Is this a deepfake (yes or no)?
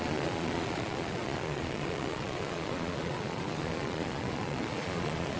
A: yes